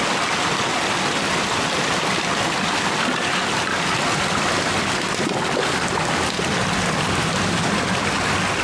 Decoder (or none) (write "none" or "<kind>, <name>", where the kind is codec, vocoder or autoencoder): none